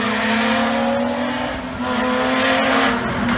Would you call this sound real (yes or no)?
yes